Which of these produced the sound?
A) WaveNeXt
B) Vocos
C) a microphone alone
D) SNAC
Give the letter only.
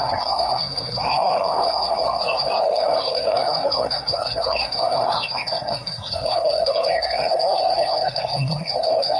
D